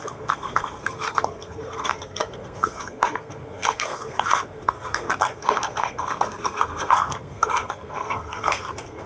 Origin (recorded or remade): remade